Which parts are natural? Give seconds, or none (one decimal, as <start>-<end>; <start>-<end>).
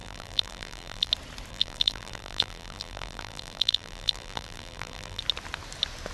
1.1-1.5; 5.2-6.1